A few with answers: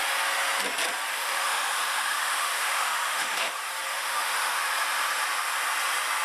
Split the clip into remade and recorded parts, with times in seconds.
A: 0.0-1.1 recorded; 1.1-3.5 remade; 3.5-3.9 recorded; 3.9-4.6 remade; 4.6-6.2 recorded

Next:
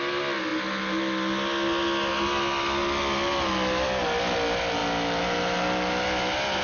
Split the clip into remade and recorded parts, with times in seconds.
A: 0.0-6.6 recorded